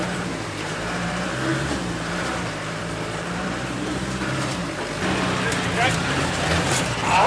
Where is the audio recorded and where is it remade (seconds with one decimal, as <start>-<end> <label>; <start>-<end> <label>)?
0.0-4.6 remade; 4.6-5.9 recorded; 5.9-7.3 remade